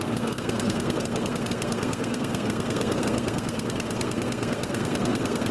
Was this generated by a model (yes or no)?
yes